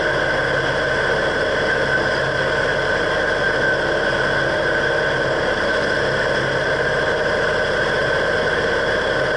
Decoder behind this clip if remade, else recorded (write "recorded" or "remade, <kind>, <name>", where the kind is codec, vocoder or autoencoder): recorded